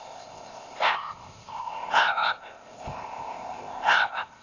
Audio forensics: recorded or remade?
remade